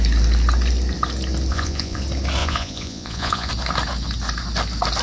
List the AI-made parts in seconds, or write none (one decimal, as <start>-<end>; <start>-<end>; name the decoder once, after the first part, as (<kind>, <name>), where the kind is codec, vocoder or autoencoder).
1.5-2.0 (vocoder, Vocos); 2.4-3.5